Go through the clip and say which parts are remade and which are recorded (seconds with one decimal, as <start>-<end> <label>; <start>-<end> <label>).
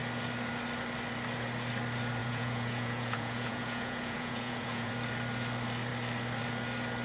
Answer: 0.0-2.2 recorded; 2.2-4.9 remade; 4.9-7.0 recorded